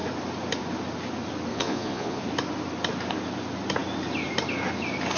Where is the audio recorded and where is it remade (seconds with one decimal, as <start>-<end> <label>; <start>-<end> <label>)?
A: 0.0-1.5 recorded; 1.5-2.2 remade; 2.2-5.2 recorded